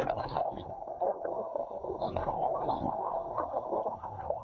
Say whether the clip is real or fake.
fake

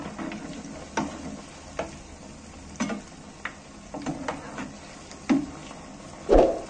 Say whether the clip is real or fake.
real